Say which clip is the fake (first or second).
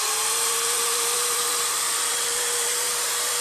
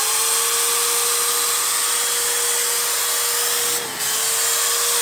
first